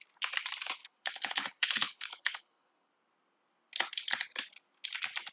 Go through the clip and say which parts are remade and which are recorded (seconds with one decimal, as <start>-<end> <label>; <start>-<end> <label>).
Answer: 0.0-0.8 recorded; 0.8-2.9 remade; 2.9-5.3 recorded

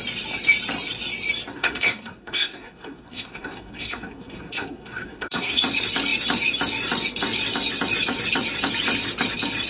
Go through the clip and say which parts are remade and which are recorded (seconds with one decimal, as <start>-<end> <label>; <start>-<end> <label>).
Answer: 0.0-1.5 recorded; 1.5-5.6 remade; 5.6-9.7 recorded

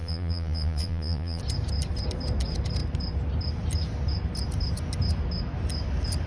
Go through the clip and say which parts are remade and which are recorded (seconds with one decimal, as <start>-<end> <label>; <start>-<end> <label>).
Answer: 0.0-1.4 remade; 1.4-6.3 recorded

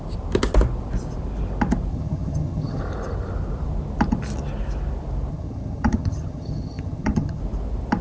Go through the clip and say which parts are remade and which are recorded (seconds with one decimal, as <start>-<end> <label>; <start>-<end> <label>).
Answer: 0.0-1.9 recorded; 1.9-2.8 remade; 2.8-5.3 recorded; 5.3-7.4 remade; 7.4-8.0 recorded

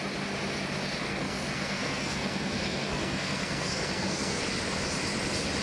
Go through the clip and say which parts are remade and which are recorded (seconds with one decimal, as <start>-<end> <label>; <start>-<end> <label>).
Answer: 0.0-1.0 recorded; 1.0-4.4 remade; 4.4-5.6 recorded